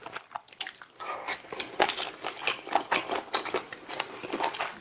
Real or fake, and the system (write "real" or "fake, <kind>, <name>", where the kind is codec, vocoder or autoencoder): real